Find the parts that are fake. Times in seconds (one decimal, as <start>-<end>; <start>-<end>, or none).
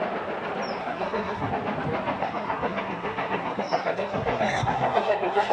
0.8-1.5; 2.2-5.5